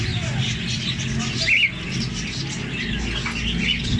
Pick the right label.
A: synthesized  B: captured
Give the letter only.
B